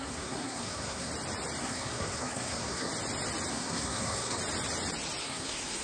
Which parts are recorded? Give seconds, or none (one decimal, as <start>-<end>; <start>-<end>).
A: 1.1-1.6; 2.9-3.5; 4.4-5.2